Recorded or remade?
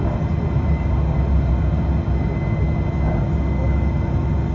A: recorded